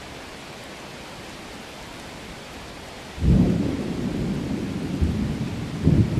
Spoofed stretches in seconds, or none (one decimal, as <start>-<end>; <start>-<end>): none